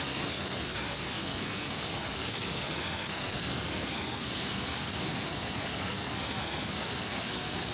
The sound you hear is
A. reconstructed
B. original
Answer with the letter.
A